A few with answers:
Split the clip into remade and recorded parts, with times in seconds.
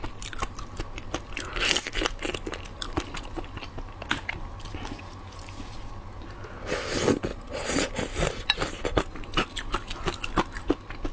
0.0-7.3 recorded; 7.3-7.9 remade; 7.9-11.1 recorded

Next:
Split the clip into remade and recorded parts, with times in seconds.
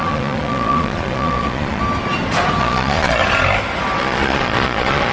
0.0-1.8 remade; 1.8-2.6 recorded; 2.6-3.2 remade; 3.2-4.0 recorded; 4.0-5.1 remade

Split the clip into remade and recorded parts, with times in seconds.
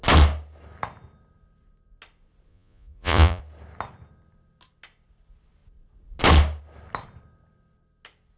0.0-2.5 recorded; 2.5-3.4 remade; 3.4-8.4 recorded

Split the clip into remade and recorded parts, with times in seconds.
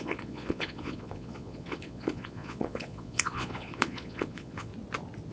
0.0-4.7 remade; 4.7-5.3 recorded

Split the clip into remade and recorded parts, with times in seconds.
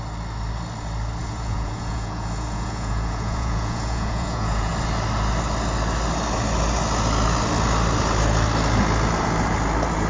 0.0-1.2 recorded; 1.2-4.7 remade; 4.7-10.1 recorded